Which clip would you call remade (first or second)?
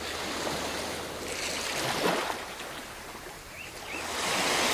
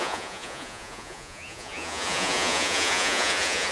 second